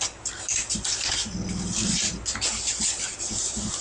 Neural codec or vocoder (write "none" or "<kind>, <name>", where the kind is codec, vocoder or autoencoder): none